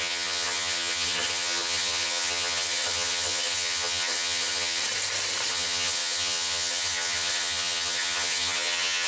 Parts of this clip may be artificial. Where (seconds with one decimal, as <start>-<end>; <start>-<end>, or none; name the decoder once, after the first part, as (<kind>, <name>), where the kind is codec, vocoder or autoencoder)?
0.0-4.8 (vocoder, HiFi-GAN); 5.5-9.1